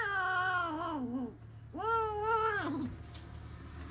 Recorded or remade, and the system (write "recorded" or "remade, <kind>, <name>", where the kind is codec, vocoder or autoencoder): recorded